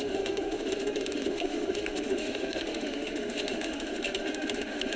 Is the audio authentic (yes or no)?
no